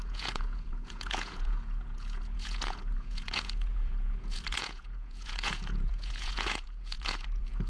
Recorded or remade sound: remade